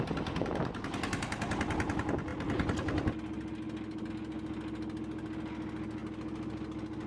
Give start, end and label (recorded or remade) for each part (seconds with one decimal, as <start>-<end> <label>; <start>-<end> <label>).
0.0-7.1 recorded